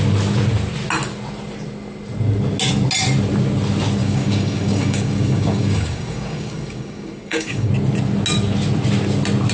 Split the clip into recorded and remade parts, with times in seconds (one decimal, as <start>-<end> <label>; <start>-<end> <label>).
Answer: 0.0-4.0 recorded; 4.0-7.7 remade; 7.7-9.5 recorded